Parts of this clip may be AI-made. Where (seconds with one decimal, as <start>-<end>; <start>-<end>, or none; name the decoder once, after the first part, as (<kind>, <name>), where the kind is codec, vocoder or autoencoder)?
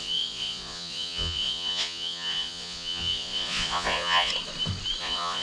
0.0-4.3 (vocoder, Vocos); 5.0-5.4